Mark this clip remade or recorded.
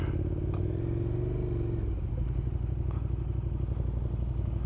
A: recorded